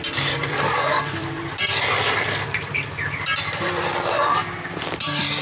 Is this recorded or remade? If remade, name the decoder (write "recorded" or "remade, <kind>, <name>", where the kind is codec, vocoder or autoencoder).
remade, vocoder, BigVGAN v2